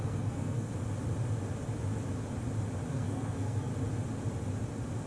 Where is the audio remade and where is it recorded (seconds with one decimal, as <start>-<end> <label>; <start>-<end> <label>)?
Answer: 0.0-0.7 remade; 0.7-2.9 recorded; 2.9-3.7 remade; 3.7-5.1 recorded